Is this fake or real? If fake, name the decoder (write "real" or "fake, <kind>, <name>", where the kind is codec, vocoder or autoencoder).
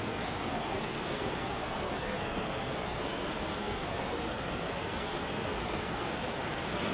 fake, codec, SNAC